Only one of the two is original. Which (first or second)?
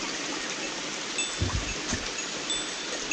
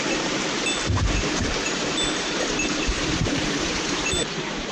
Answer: first